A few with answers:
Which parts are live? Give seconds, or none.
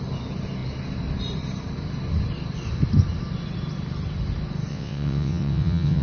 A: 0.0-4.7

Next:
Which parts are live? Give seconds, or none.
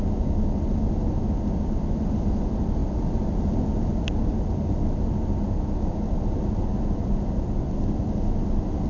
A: 0.0-8.9